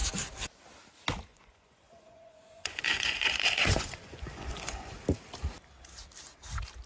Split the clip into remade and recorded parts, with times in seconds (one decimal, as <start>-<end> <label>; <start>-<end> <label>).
0.0-1.3 recorded; 1.3-4.9 remade; 4.9-6.9 recorded